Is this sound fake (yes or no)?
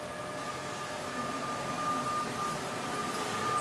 no